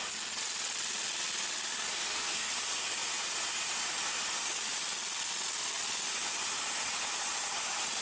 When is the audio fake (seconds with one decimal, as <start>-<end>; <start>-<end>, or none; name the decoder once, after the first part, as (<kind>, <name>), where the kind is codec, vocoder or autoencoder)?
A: 2.0-2.5 (codec, SNAC)